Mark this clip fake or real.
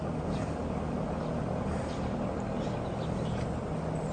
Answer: real